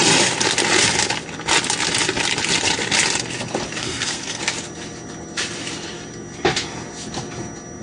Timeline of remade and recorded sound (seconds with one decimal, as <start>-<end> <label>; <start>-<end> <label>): 0.0-3.8 recorded; 3.8-4.4 remade; 4.4-7.8 recorded